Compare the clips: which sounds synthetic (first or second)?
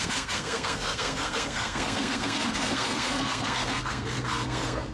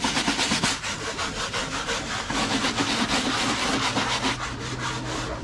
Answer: first